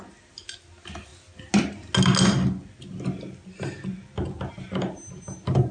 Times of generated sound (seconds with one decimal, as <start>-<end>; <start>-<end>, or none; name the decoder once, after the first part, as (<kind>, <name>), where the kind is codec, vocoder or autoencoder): none